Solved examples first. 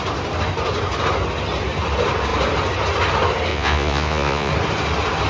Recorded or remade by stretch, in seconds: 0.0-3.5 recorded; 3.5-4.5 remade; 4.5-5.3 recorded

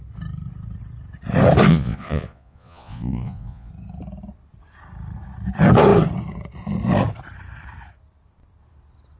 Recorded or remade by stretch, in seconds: 0.0-1.7 recorded; 1.7-3.7 remade; 3.7-9.2 recorded

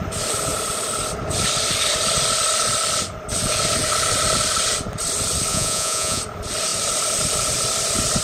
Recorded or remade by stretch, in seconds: 0.0-5.5 recorded; 5.5-6.2 remade; 6.2-8.2 recorded